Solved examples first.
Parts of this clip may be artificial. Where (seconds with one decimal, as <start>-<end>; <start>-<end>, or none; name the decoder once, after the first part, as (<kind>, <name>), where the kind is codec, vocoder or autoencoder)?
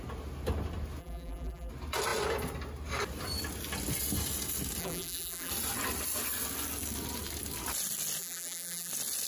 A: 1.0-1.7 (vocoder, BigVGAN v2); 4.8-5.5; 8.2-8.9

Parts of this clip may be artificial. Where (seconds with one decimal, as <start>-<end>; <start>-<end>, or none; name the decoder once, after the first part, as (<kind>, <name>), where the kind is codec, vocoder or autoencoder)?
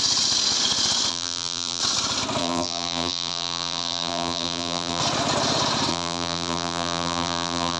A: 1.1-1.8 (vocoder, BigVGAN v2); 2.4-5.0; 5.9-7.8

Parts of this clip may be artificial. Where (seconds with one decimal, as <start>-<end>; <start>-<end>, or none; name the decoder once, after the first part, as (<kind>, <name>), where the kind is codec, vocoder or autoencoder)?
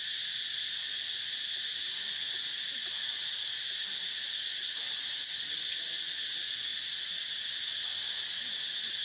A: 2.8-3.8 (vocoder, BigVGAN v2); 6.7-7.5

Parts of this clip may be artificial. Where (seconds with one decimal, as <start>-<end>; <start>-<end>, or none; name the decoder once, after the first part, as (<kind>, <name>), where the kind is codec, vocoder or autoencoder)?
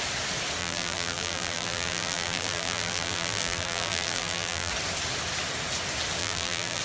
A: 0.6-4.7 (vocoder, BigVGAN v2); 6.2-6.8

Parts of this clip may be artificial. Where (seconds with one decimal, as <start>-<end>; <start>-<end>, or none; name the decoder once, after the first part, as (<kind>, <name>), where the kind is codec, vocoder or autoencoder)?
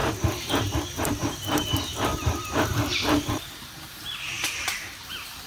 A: 0.8-5.5 (vocoder, BigVGAN v2)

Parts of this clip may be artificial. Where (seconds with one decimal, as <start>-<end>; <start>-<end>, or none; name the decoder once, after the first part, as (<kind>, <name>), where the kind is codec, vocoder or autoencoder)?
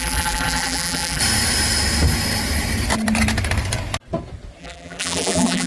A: 0.0-1.2 (vocoder, BigVGAN v2); 4.6-5.7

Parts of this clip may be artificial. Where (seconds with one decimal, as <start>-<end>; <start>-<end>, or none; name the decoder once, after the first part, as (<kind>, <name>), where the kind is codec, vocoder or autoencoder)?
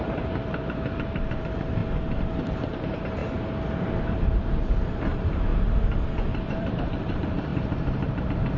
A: 0.0-1.8 (vocoder, BigVGAN v2); 2.5-3.2; 4.0-5.5; 6.7-8.6